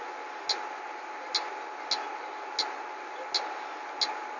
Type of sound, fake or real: real